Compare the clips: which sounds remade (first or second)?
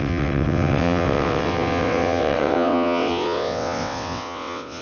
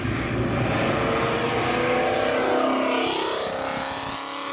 first